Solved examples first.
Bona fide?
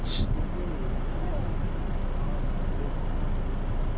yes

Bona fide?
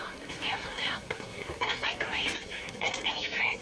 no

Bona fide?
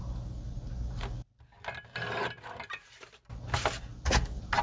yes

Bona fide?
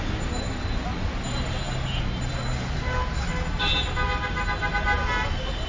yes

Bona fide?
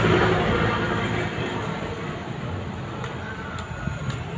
yes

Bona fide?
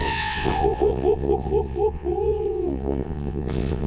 no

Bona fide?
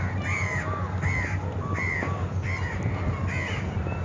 yes